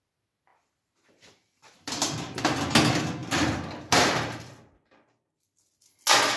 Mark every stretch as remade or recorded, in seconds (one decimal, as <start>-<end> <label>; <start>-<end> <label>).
0.0-0.5 recorded; 0.5-2.4 remade; 2.4-3.2 recorded; 3.2-5.8 remade; 5.8-6.4 recorded